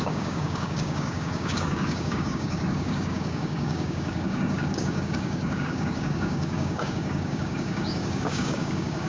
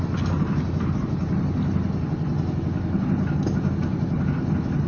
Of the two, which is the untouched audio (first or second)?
second